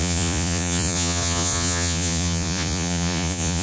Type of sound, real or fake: fake